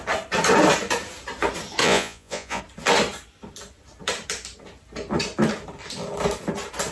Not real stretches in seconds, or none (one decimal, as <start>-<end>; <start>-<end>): 1.8-2.6